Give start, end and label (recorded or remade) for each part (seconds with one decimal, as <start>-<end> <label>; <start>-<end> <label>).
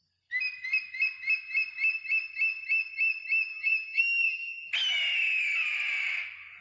0.0-3.5 recorded; 3.5-4.7 remade; 4.7-6.6 recorded